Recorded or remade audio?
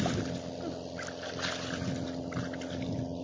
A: recorded